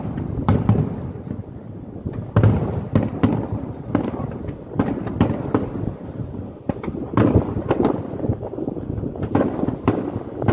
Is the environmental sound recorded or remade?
recorded